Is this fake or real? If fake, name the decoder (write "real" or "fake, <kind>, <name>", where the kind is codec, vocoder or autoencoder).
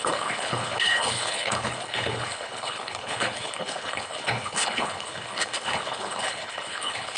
fake, codec, HILCodec